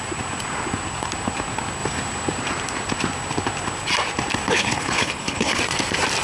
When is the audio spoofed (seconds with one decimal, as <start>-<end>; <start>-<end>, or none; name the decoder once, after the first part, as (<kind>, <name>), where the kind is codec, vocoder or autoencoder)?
4.5-5.6 (codec, HILCodec)